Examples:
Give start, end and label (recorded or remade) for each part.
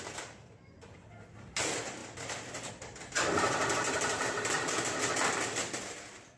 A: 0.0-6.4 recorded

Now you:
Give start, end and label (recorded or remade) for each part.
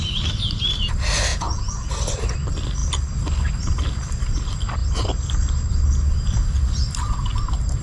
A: 0.0-1.3 recorded; 1.3-1.9 remade; 1.9-7.8 recorded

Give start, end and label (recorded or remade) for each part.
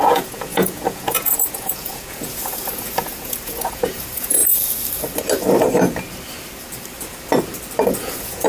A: 0.0-4.4 remade; 4.4-8.0 recorded; 8.0-8.5 remade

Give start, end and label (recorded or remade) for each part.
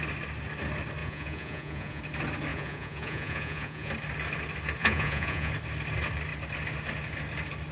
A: 0.0-1.0 recorded; 1.0-2.0 remade; 2.0-2.5 recorded; 2.5-3.9 remade; 3.9-4.8 recorded; 4.8-5.5 remade; 5.5-7.7 recorded